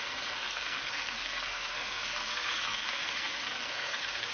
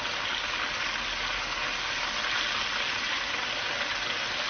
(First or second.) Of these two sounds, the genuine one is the second